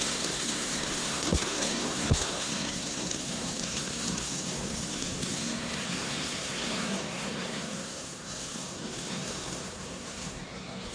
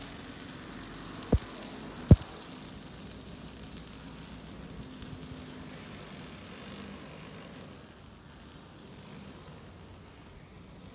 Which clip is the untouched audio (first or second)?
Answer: second